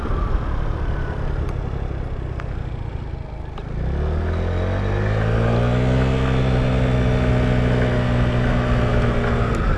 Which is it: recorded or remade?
recorded